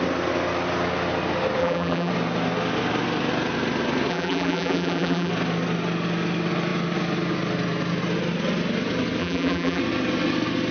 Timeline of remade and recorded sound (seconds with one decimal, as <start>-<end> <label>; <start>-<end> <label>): 0.0-1.6 recorded; 1.6-2.1 remade; 2.1-4.1 recorded; 4.1-5.3 remade; 5.3-9.2 recorded; 9.2-9.8 remade; 9.8-10.7 recorded